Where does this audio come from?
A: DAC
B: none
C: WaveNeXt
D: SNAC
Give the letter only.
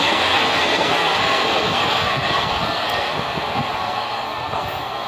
D